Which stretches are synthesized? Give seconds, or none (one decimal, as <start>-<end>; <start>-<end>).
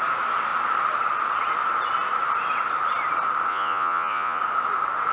3.5-4.4